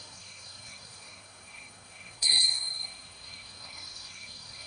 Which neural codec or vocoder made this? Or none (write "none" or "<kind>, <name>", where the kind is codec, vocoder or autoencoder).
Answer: codec, SNAC